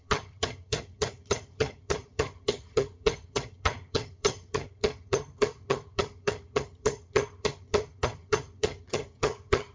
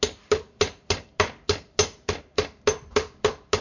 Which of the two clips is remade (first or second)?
first